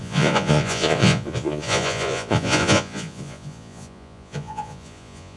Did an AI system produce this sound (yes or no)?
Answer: yes